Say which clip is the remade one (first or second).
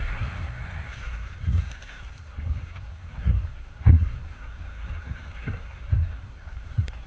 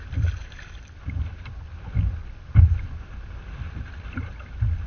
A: first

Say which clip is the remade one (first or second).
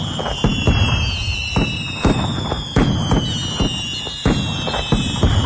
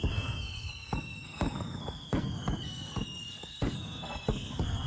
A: second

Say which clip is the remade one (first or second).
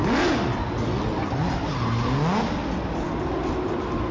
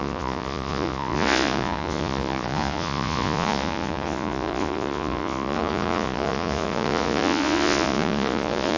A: second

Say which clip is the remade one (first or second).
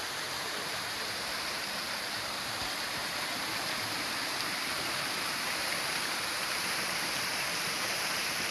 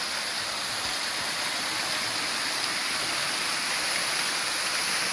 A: first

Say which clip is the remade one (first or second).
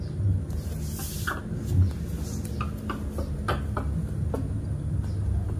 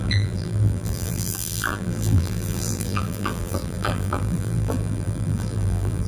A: second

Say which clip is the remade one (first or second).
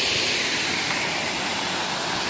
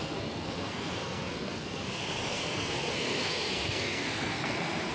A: second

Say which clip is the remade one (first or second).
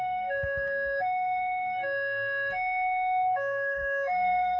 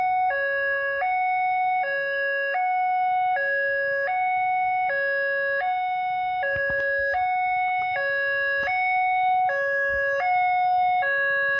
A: first